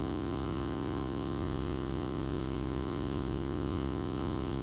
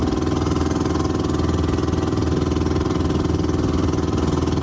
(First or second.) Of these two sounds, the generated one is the first